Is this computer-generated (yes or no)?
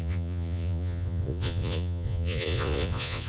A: yes